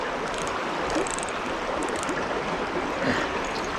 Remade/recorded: recorded